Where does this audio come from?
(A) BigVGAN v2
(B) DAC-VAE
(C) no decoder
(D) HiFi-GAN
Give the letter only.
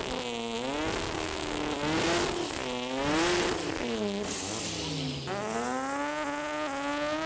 C